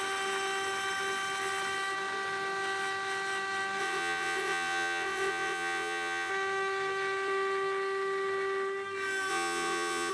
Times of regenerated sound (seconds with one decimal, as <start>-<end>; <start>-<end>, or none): 3.8-6.3; 9.3-10.1